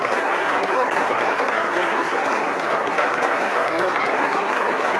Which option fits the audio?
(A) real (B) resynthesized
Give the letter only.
B